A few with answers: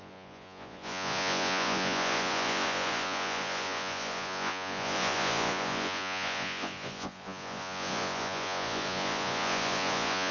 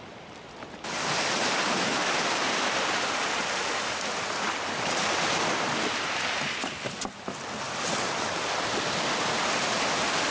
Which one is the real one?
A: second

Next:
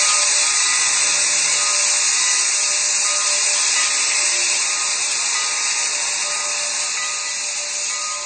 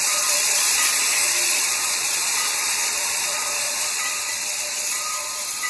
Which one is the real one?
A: first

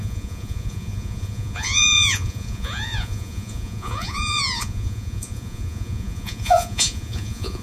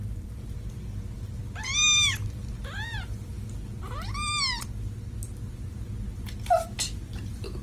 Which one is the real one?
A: second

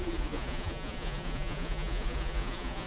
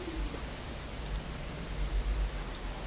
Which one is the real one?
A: second